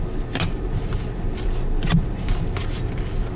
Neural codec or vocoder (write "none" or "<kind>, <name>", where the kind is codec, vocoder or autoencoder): none